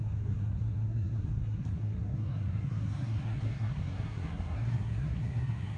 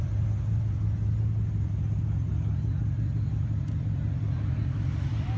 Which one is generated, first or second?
first